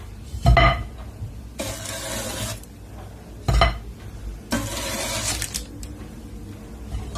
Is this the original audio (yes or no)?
yes